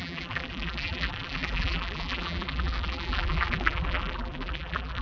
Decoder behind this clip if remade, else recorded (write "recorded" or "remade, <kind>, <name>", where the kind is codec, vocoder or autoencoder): remade, vocoder, BigVGAN v2